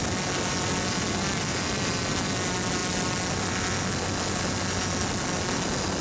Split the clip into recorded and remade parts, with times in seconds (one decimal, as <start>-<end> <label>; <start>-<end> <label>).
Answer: 0.0-6.0 recorded